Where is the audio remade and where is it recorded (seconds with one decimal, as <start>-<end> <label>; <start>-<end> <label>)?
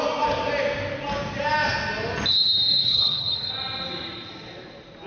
0.0-2.8 recorded; 2.8-3.5 remade; 3.5-5.1 recorded